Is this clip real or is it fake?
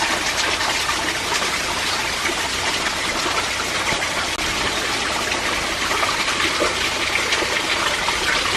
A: real